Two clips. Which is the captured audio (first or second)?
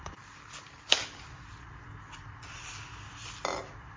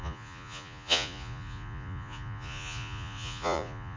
first